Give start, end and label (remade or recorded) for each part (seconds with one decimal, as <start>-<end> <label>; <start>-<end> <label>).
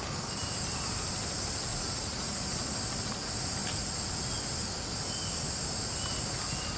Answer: 0.0-1.7 recorded; 1.7-2.4 remade; 2.4-6.8 recorded